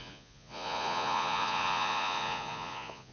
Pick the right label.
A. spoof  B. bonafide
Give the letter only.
A